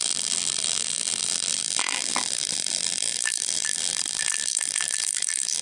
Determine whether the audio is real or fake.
fake